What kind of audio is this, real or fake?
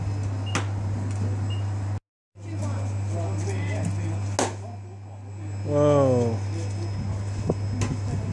real